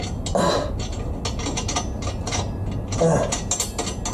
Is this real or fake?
real